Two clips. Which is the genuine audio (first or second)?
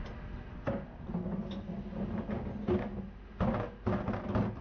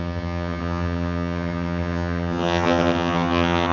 first